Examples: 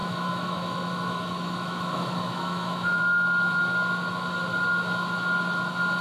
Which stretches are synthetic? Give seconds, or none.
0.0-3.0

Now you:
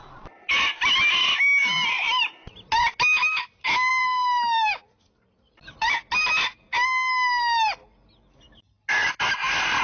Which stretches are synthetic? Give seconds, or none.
1.6-2.2; 3.9-6.3

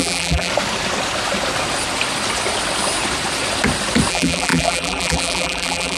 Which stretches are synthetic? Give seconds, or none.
0.0-0.5; 4.1-6.0

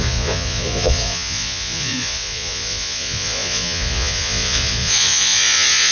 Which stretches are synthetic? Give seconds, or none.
0.0-5.9